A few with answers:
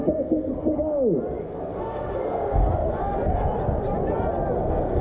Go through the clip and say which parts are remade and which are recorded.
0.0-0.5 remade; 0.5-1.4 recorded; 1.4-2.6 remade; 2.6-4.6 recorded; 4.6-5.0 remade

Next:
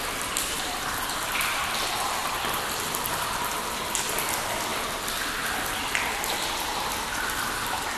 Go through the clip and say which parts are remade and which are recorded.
0.0-8.0 recorded

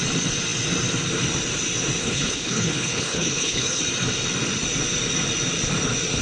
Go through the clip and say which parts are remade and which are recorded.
0.0-2.0 recorded; 2.0-3.8 remade; 3.8-6.2 recorded